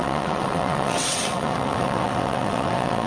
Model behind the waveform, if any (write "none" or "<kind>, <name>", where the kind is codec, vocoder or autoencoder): vocoder, WaveNeXt